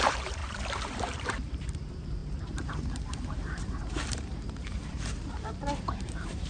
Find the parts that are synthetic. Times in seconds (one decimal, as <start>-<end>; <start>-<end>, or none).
0.0-6.5